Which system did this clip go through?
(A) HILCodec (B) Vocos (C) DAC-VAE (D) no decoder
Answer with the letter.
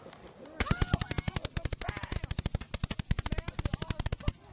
D